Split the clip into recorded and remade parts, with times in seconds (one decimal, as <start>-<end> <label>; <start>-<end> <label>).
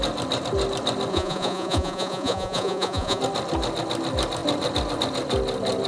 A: 0.0-1.1 recorded; 1.1-3.2 remade; 3.2-5.9 recorded